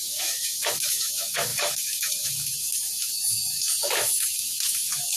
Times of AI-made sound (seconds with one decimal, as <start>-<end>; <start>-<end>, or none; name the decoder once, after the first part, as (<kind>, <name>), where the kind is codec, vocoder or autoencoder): 0.0-5.2 (autoencoder, DAC-VAE)